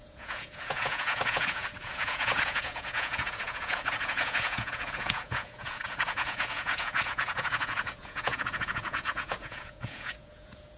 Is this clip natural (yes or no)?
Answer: no